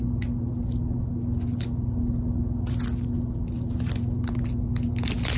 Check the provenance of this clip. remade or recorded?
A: recorded